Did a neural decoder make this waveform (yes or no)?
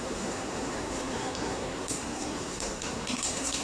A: yes